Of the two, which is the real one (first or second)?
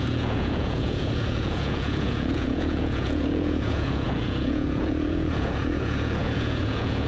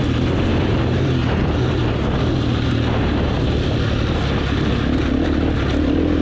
second